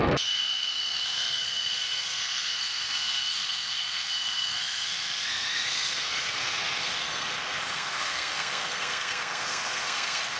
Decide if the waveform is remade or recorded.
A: remade